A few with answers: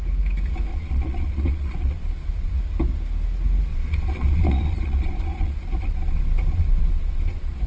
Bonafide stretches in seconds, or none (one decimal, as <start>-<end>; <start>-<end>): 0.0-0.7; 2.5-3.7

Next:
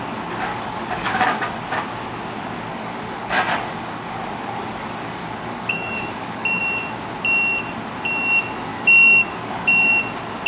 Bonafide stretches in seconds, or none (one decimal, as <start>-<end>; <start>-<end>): 0.0-0.5; 1.6-2.7; 6.6-8.7; 9.9-10.5

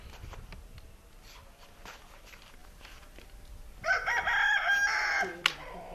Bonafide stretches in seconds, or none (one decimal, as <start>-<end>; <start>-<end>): 0.0-5.9